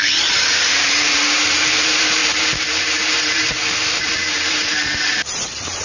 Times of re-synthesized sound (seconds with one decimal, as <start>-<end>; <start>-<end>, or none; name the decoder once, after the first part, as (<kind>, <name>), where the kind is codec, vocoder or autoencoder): 0.0-5.8 (vocoder, BigVGAN v2)

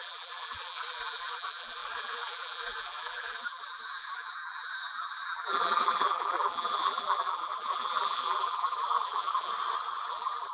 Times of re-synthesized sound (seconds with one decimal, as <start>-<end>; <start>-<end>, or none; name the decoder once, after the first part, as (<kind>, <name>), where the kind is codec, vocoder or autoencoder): 0.0-9.5 (vocoder, BigVGAN v2); 10.1-10.5

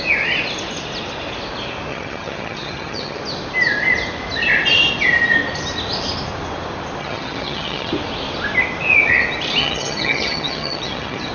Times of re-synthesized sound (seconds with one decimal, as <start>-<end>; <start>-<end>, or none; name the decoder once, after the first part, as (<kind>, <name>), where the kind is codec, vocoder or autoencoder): 1.9-3.2 (vocoder, HiFi-GAN); 7.0-7.9; 9.6-11.3

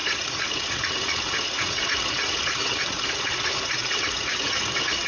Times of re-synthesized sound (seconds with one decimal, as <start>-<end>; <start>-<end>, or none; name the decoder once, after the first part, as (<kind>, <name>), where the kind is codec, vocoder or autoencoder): 0.0-5.1 (vocoder, Vocos)

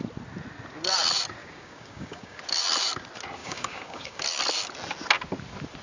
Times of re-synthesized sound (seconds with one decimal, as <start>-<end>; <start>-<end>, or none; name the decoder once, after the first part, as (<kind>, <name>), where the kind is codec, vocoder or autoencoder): 1.4-2.4 (codec, DAC); 3.4-4.2

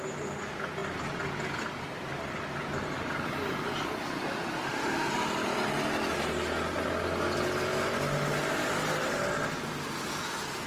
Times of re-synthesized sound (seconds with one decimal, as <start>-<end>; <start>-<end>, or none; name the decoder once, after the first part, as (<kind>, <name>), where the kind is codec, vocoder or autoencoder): 4.6-5.1 (autoencoder, DAC-VAE)